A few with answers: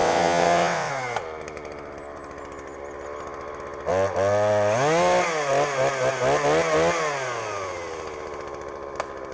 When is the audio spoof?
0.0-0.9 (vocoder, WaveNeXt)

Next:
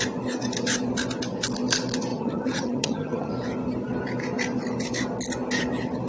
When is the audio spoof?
2.1-3.3 (vocoder, HiFi-GAN)

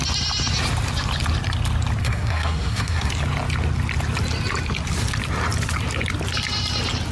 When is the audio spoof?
2.0-3.1 (codec, SNAC)

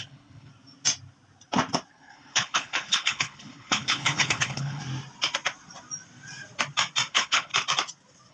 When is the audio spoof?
0.0-0.5 (codec, HILCodec); 1.9-4.8; 7.1-7.5